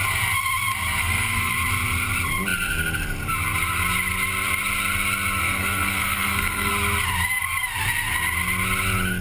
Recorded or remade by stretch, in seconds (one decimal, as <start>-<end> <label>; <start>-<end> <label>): 0.0-1.0 recorded; 1.0-1.5 remade; 1.5-5.4 recorded; 5.4-6.7 remade; 6.7-9.2 recorded

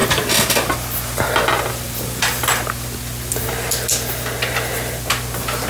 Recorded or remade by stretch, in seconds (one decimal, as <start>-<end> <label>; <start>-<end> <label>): 0.0-5.7 recorded

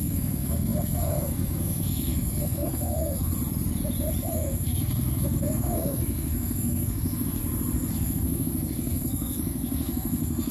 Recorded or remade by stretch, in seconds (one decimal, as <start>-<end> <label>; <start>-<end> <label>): 0.0-3.3 remade; 3.3-4.3 recorded; 4.3-7.4 remade; 7.4-7.9 recorded; 7.9-10.5 remade

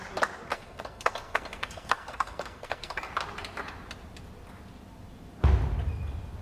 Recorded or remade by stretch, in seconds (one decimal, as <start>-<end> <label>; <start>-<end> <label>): 0.0-0.5 recorded; 0.5-3.1 remade; 3.1-6.4 recorded

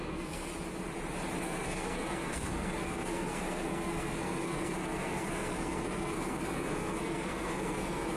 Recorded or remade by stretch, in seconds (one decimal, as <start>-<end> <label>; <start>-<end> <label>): 0.0-0.5 remade; 0.5-1.4 recorded; 1.4-8.2 remade

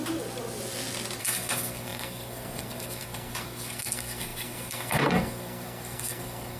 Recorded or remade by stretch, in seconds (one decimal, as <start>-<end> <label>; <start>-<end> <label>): 0.0-1.2 recorded; 1.2-6.6 remade

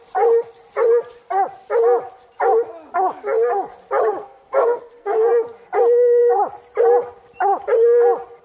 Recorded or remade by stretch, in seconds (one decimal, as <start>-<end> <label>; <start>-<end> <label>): 0.0-4.2 recorded; 4.2-5.3 remade; 5.3-8.4 recorded

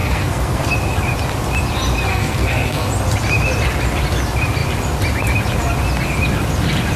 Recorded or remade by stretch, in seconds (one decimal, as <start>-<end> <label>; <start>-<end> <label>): 0.0-0.7 remade; 0.7-2.1 recorded; 2.1-2.9 remade; 2.9-7.0 recorded